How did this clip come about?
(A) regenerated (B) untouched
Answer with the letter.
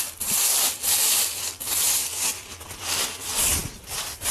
B